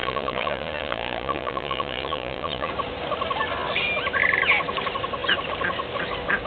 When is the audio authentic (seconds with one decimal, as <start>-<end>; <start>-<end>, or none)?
2.7-6.5